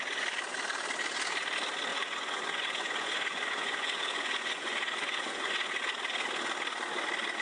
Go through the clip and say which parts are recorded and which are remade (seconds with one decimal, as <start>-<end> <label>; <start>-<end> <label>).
0.0-1.9 recorded; 1.9-5.8 remade; 5.8-7.4 recorded